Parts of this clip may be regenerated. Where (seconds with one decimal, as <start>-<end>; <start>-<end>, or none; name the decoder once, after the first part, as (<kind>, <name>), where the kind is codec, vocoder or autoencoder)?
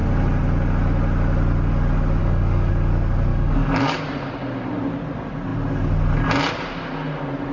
2.2-2.7 (codec, DAC); 3.3-4.0